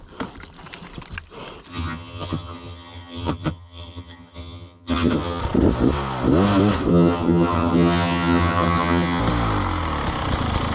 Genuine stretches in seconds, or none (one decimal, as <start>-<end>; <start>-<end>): 0.0-1.7; 5.4-6.9; 9.2-10.7

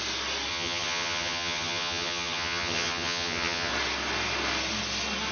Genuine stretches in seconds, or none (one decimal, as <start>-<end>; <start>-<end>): 0.0-0.5; 3.7-5.3